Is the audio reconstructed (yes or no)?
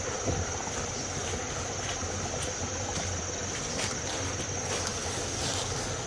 no